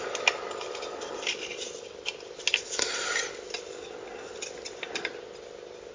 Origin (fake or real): real